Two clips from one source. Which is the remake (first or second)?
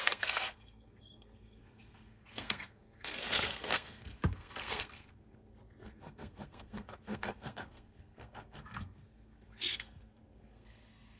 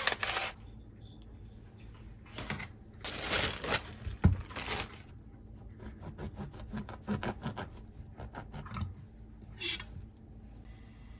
first